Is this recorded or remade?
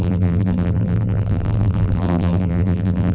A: remade